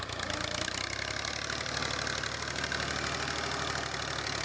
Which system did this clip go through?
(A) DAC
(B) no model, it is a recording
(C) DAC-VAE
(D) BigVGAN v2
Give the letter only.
B